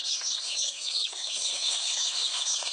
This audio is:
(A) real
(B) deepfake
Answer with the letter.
B